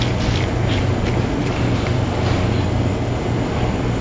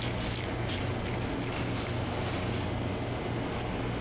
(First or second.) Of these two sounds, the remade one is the first